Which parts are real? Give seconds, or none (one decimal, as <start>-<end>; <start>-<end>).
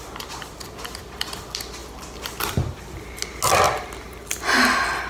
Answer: 0.0-5.1